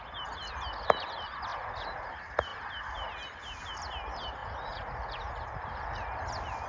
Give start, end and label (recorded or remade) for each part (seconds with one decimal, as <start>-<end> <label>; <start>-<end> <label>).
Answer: 0.0-1.5 recorded; 1.5-2.1 remade; 2.1-4.4 recorded; 4.4-5.4 remade; 5.4-6.7 recorded

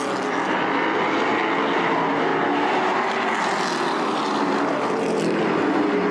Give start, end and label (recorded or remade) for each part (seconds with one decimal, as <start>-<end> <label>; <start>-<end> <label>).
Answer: 0.0-6.1 recorded

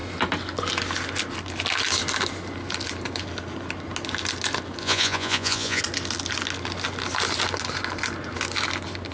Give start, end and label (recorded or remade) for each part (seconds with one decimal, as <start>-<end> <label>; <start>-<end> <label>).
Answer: 0.0-4.8 recorded; 4.8-5.8 remade; 5.8-9.1 recorded

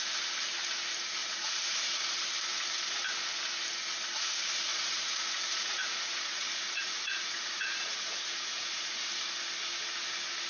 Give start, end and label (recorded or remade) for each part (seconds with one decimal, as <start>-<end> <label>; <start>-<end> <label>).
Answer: 0.0-1.2 recorded; 1.2-2.0 remade; 2.0-4.7 recorded; 4.7-9.0 remade; 9.0-10.5 recorded

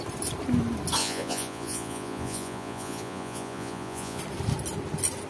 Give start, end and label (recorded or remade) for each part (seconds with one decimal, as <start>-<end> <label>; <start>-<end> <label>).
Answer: 0.0-1.0 recorded; 1.0-4.2 remade; 4.2-5.3 recorded

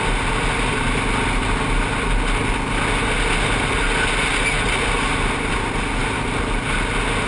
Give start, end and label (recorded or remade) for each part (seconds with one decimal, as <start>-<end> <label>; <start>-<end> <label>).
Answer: 0.0-7.3 recorded

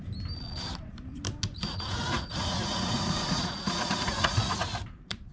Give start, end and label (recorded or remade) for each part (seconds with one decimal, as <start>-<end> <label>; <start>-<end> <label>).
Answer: 0.0-1.5 recorded; 1.5-4.7 remade; 4.7-5.3 recorded

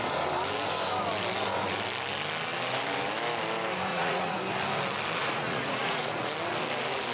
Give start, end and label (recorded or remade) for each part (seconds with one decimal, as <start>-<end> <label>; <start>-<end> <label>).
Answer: 0.0-3.9 recorded; 3.9-4.4 remade; 4.4-5.2 recorded; 5.2-6.3 remade; 6.3-7.1 recorded